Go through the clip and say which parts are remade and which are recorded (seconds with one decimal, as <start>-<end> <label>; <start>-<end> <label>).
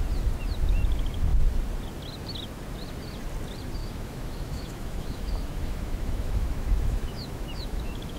0.0-3.8 recorded; 3.8-8.2 remade